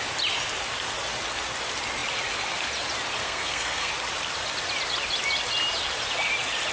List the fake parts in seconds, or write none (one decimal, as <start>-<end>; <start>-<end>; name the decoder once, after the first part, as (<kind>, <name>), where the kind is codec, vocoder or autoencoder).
3.2-3.9 (codec, SNAC)

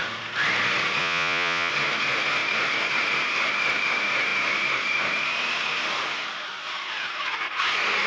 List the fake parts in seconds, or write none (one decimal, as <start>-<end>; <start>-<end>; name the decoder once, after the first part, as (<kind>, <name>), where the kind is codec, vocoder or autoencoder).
1.0-1.7 (vocoder, Vocos)